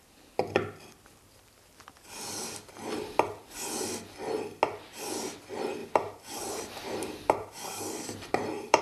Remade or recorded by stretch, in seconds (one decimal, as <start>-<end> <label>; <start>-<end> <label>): 0.0-5.8 recorded; 5.8-8.8 remade

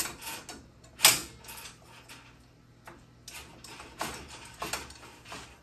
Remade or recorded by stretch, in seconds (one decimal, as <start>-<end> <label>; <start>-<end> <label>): 0.0-5.6 recorded

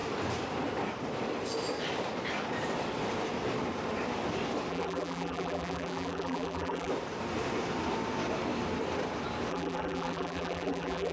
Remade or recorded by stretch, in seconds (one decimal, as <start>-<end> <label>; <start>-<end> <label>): 0.0-4.7 recorded; 4.7-6.9 remade; 6.9-9.5 recorded; 9.5-11.1 remade